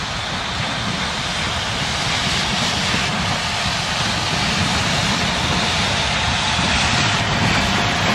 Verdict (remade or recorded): recorded